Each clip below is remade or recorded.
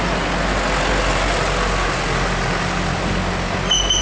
recorded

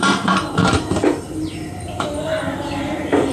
remade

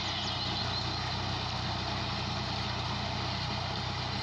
recorded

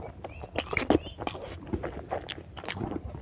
recorded